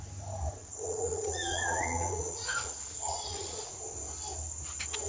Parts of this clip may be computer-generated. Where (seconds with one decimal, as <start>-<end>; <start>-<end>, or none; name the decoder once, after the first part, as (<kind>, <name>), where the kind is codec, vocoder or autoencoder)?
0.6-3.7 (vocoder, Vocos)

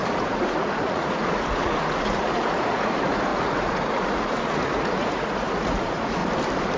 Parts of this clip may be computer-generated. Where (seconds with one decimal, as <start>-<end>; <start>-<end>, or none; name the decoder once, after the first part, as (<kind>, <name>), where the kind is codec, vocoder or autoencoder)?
0.0-6.2 (vocoder, Vocos)

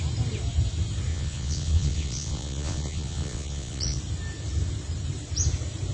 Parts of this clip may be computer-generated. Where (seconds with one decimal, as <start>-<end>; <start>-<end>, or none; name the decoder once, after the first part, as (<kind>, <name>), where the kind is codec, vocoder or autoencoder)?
1.1-4.0 (vocoder, Vocos)

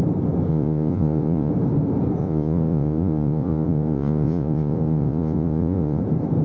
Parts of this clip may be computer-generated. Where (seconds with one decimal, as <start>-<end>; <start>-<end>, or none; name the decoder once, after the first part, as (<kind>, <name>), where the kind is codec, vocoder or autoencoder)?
0.5-1.5 (vocoder, Vocos); 2.2-6.0

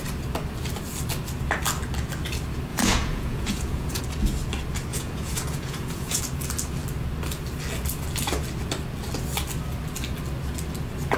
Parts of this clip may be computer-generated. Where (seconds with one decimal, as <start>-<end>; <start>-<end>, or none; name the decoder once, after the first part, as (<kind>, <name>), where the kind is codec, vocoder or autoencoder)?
2.7-4.0 (vocoder, Vocos); 4.9-6.2

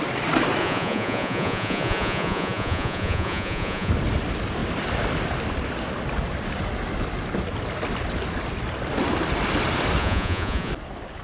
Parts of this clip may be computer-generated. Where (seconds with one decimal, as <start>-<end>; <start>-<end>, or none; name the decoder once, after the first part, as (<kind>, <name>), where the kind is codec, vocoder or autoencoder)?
0.6-3.9 (vocoder, Vocos); 10.0-10.7

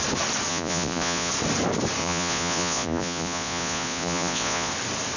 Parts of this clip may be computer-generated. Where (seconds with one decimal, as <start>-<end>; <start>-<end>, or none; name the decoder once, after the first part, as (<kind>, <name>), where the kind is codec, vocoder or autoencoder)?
0.5-1.3 (vocoder, Vocos); 2.0-4.7